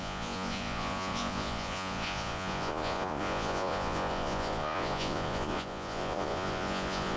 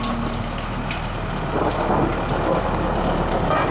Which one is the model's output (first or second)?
first